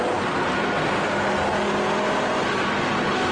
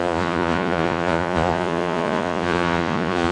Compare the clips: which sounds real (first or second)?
first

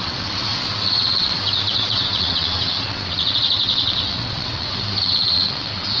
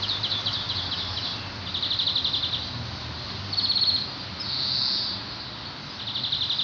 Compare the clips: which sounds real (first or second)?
second